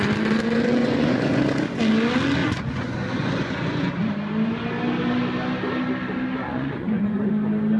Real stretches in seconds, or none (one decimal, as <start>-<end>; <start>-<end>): 0.0-0.8; 1.4-2.4; 3.9-6.4; 7.3-7.8